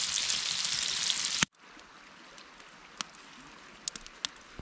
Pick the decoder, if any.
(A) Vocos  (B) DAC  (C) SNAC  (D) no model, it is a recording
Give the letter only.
D